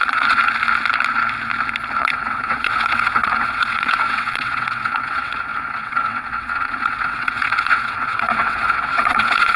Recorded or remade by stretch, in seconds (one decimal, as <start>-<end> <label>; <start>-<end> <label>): 0.0-0.4 remade; 0.4-2.0 recorded; 2.0-9.6 remade